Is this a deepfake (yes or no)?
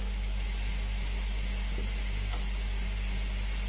no